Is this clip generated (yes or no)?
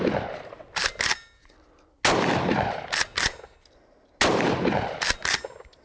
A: no